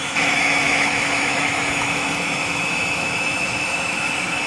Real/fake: fake